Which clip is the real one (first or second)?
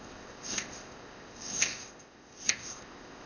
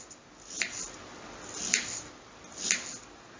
second